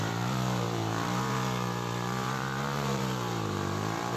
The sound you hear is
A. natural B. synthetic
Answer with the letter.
B